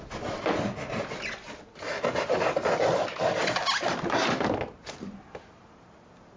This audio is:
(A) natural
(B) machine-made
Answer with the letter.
A